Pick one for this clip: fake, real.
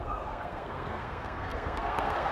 fake